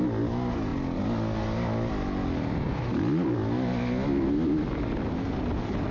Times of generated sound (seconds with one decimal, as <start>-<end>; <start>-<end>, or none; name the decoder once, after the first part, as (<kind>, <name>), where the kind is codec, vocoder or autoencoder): none